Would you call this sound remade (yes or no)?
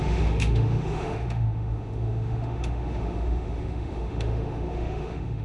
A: yes